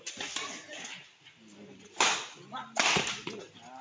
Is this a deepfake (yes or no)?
no